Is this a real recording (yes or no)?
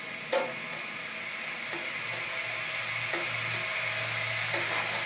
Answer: yes